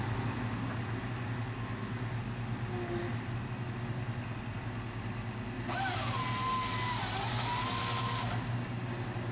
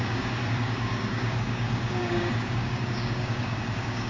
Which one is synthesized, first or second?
second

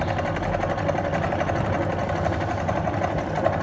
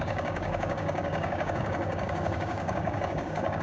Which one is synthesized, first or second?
second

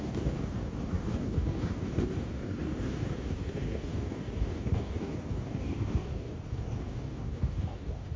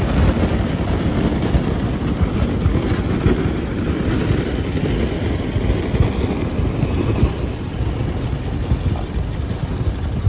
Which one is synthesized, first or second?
first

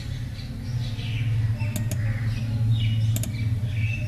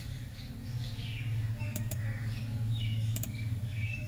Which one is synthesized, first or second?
second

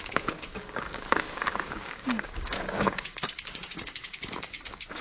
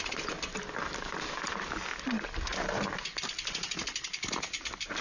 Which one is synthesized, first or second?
first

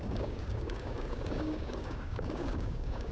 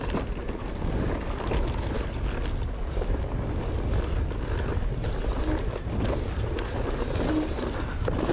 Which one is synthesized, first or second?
first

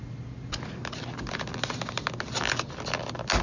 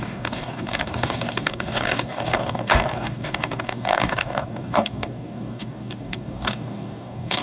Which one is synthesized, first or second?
second